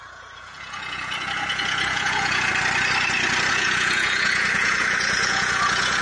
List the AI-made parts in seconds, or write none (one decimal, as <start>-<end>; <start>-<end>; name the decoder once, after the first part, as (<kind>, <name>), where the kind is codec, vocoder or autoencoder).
0.0-2.5 (vocoder, Vocos); 3.5-6.0